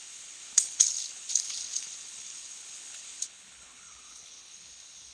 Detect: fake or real fake